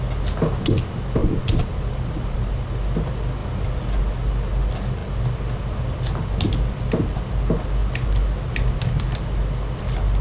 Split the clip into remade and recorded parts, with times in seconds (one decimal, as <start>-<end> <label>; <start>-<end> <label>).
0.0-1.2 recorded; 1.2-2.7 remade; 2.7-10.2 recorded